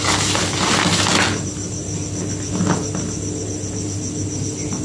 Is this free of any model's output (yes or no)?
yes